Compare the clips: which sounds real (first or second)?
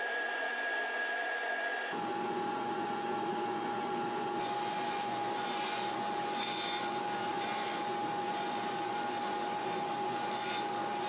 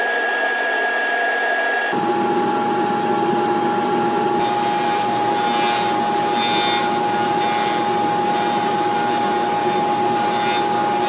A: second